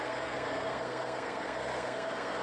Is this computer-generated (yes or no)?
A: yes